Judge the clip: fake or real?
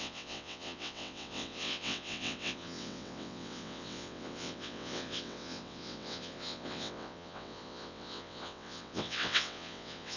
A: fake